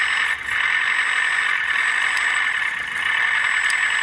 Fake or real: real